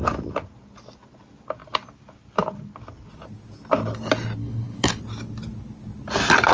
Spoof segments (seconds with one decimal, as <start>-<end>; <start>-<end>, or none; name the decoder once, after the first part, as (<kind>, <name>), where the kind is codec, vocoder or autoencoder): 4.4-5.0 (codec, HILCodec)